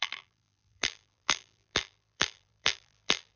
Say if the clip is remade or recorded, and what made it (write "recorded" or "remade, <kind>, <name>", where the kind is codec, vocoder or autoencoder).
remade, vocoder, BigVGAN v2